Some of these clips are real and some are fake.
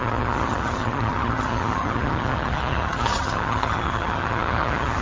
fake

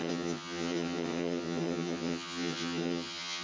fake